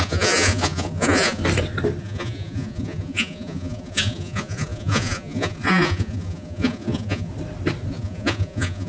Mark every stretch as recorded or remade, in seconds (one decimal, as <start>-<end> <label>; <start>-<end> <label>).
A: 0.0-1.4 remade; 1.4-2.0 recorded; 2.0-7.3 remade; 7.3-7.9 recorded; 7.9-8.9 remade